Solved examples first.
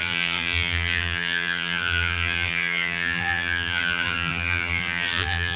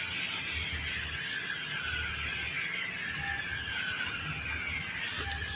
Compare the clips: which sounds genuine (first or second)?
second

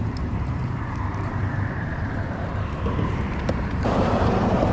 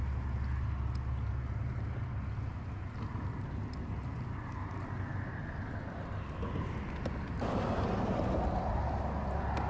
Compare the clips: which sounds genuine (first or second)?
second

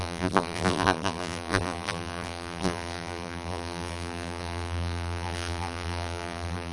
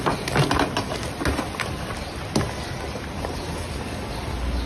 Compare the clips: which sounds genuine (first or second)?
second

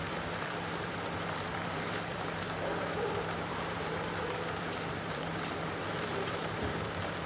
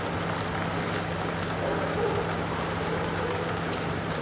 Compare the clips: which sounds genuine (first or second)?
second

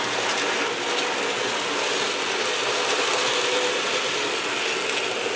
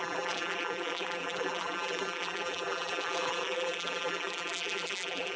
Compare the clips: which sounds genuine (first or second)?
first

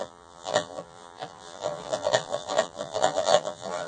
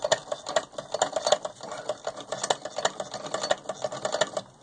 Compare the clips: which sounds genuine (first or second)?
second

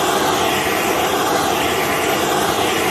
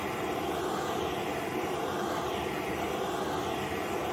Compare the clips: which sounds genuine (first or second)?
second